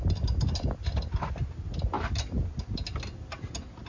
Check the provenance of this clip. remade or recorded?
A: recorded